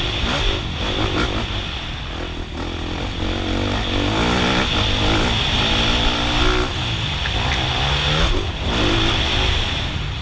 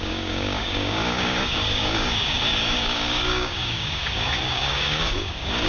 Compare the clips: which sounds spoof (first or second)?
second